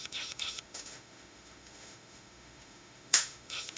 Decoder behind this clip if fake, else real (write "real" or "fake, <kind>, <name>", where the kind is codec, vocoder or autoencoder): fake, autoencoder, DAC-VAE